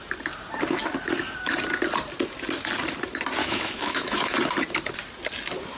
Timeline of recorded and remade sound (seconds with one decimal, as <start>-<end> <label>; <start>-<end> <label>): 0.0-3.4 recorded; 3.4-4.3 remade; 4.3-5.8 recorded